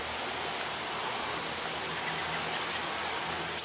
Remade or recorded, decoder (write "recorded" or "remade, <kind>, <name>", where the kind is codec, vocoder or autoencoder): recorded